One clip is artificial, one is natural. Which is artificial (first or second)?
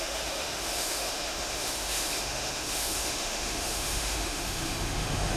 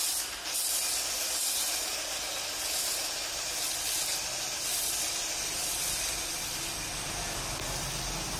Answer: first